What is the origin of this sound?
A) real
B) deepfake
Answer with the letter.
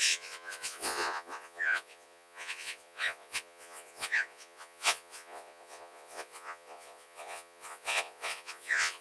B